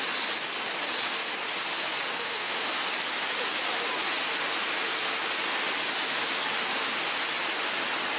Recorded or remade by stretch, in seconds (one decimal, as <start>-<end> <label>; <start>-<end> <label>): 0.0-2.1 recorded; 2.1-2.8 remade; 2.8-8.2 recorded